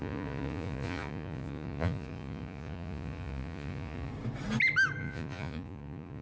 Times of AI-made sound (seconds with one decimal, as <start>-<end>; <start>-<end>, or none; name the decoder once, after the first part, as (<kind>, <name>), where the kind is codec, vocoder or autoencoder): 0.0-4.1 (vocoder, Vocos); 5.0-6.2